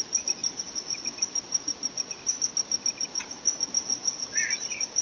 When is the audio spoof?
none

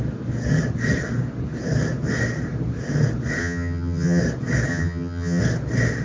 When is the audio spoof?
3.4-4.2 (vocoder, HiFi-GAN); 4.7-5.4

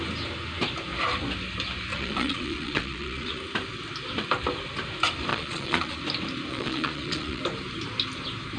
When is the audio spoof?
1.9-3.4 (vocoder, Vocos); 5.3-6.0; 6.5-7.4

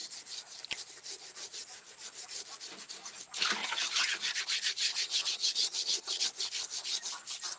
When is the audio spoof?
3.6-4.4 (vocoder, HiFi-GAN); 4.9-6.2